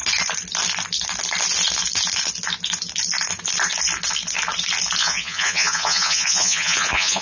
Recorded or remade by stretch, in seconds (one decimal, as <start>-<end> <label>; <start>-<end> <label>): 0.0-5.0 recorded; 5.0-7.2 remade